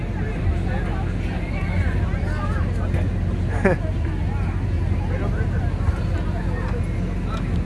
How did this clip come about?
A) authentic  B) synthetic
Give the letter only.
A